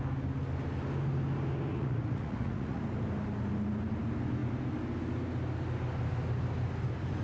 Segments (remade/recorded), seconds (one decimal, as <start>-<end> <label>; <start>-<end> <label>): 0.0-1.7 recorded; 1.7-2.8 remade; 2.8-7.2 recorded